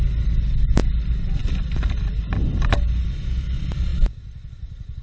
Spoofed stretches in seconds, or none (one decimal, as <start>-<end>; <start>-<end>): none

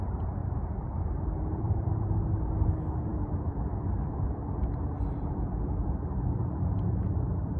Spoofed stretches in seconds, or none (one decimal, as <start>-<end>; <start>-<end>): 0.0-7.6